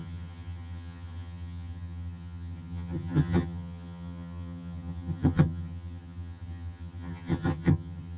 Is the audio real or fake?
fake